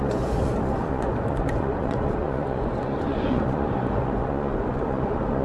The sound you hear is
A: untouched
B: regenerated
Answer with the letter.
B